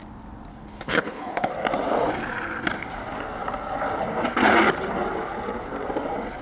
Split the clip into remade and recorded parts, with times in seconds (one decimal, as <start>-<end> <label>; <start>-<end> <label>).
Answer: 0.0-0.5 recorded; 0.5-1.5 remade; 1.5-6.4 recorded